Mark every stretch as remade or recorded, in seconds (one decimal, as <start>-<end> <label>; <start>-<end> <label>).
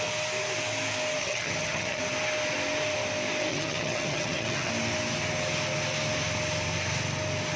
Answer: 0.0-1.2 recorded; 1.2-2.0 remade; 2.0-3.5 recorded; 3.5-4.7 remade; 4.7-7.6 recorded